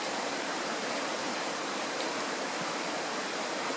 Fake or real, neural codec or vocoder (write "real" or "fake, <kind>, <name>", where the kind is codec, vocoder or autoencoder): fake, vocoder, BigVGAN v2